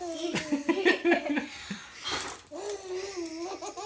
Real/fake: real